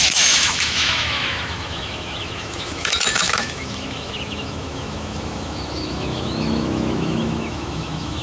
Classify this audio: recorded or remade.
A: remade